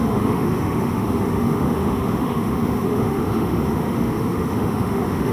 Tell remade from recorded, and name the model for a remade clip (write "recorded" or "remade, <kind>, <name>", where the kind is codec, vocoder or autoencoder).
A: remade, autoencoder, DAC-VAE